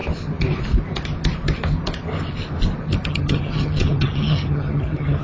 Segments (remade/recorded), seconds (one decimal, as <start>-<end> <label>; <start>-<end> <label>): 0.0-3.1 recorded; 3.1-5.2 remade